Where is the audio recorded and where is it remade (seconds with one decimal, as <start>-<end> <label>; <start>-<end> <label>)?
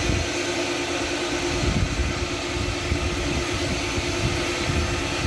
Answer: 0.0-5.3 recorded